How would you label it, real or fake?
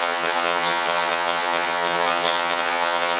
fake